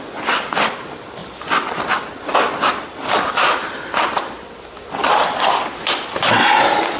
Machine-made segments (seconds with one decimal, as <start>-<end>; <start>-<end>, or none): 1.2-3.1